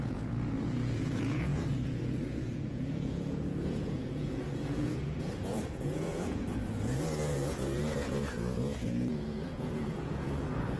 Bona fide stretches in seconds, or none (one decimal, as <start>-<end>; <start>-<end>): none